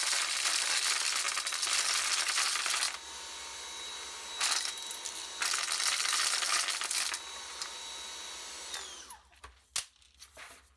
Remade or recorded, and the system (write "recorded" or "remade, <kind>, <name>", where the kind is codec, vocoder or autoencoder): recorded